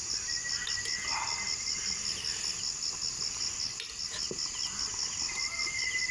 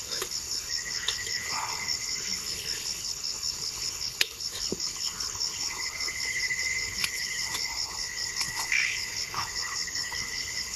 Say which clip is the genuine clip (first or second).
first